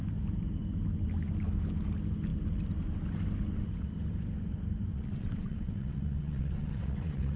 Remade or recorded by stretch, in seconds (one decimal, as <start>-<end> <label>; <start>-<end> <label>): 0.0-4.9 recorded; 4.9-7.4 remade